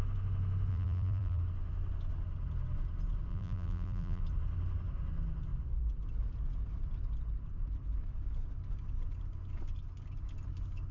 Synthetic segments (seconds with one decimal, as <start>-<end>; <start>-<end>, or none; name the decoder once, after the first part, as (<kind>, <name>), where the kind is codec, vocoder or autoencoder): 0.7-1.4 (vocoder, BigVGAN v2); 3.3-4.2